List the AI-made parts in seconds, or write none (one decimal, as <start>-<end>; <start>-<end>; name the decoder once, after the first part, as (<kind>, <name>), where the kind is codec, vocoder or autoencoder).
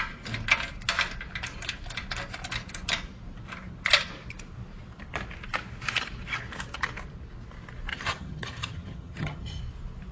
7.9-9.6 (vocoder, HiFi-GAN)